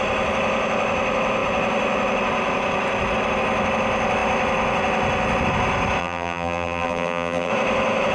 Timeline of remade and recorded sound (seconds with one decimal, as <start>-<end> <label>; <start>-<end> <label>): 0.0-6.0 recorded; 6.0-7.5 remade; 7.5-8.1 recorded